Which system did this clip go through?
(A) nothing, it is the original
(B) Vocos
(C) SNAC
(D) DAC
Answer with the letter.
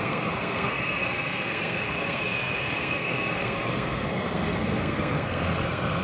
C